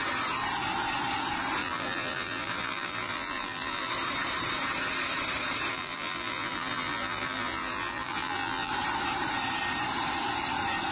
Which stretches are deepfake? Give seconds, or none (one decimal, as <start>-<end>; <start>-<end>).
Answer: 1.6-3.9; 5.7-8.7